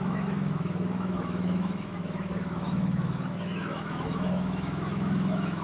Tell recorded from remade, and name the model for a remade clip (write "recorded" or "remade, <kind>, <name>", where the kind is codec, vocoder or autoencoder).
remade, autoencoder, DAC-VAE